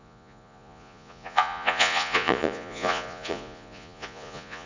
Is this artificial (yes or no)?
yes